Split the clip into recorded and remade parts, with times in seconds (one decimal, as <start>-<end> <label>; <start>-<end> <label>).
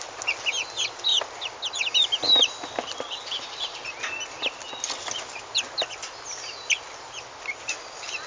0.0-8.3 recorded